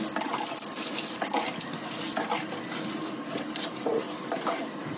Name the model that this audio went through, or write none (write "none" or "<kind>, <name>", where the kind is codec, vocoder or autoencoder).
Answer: none